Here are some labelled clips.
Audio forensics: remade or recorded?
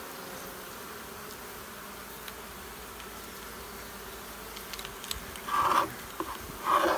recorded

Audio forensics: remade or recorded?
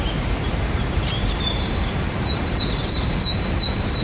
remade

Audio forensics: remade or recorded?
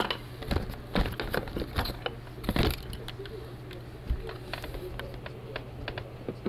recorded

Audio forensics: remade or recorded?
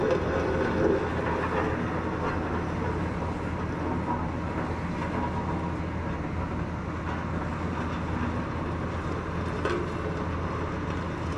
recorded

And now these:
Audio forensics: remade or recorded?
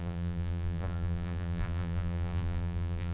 remade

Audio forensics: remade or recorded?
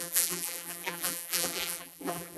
remade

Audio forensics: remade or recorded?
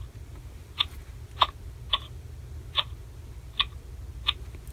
recorded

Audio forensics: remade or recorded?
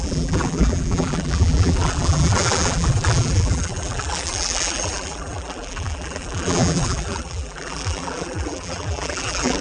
remade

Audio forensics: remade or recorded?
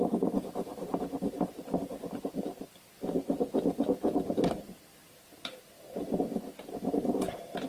remade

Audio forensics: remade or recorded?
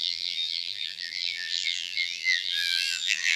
remade